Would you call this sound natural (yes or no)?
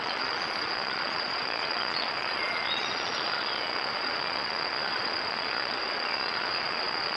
no